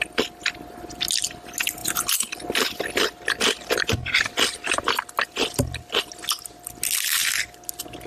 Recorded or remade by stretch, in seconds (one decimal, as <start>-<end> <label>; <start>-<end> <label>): 0.0-8.1 recorded